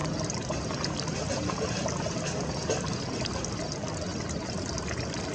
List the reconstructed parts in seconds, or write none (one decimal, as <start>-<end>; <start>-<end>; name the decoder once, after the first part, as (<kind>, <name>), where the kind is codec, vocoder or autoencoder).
none